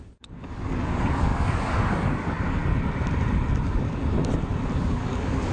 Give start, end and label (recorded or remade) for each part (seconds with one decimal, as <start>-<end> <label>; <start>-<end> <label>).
0.0-2.6 remade; 2.6-3.6 recorded; 3.6-4.0 remade; 4.0-4.8 recorded; 4.8-5.5 remade